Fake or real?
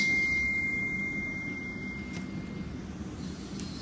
real